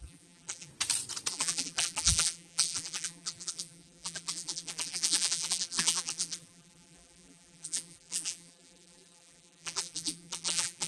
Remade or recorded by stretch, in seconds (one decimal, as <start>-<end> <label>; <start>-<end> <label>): 0.0-0.7 remade; 0.7-1.3 recorded; 1.3-10.9 remade